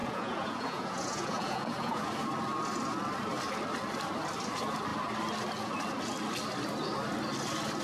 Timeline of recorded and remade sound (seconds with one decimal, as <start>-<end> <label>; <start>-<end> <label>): 0.0-2.1 remade; 2.1-7.8 recorded